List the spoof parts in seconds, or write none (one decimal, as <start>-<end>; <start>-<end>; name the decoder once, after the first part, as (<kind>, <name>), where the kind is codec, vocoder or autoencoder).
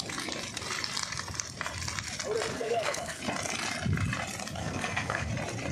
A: 2.5-3.2 (codec, SNAC); 4.6-5.3